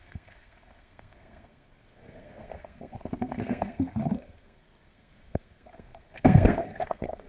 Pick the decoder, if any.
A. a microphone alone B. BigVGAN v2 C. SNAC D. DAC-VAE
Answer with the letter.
C